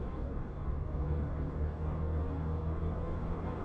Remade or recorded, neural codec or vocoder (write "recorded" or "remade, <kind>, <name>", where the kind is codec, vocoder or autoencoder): remade, codec, DAC